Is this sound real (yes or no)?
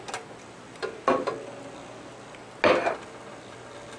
yes